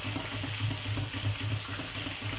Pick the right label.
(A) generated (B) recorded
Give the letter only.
B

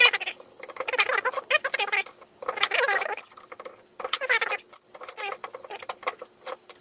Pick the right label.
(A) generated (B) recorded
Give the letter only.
A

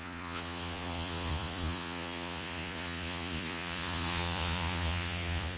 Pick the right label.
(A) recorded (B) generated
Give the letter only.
B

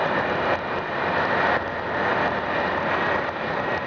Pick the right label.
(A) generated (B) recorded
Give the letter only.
B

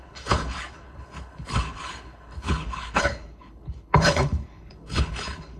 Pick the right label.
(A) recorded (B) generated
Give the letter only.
B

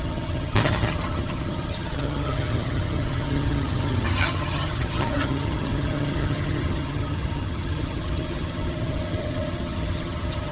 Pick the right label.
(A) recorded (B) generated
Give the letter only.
B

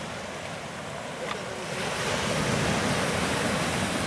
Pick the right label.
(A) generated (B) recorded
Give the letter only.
B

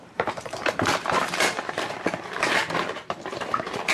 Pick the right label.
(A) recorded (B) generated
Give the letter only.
B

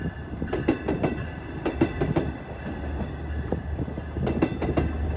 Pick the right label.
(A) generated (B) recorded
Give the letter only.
B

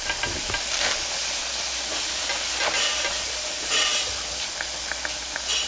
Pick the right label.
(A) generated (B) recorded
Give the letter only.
B